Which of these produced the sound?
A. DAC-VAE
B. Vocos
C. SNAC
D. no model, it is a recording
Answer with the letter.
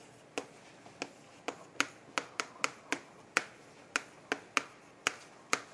D